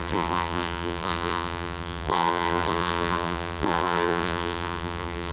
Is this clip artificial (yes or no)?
yes